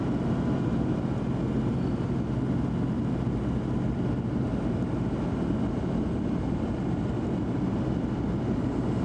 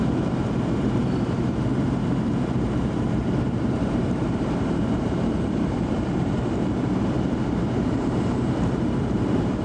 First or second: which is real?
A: first